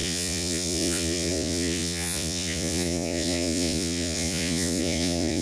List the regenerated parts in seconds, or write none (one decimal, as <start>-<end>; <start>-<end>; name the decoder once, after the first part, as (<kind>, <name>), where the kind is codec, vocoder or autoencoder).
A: 0.0-5.4 (vocoder, Vocos)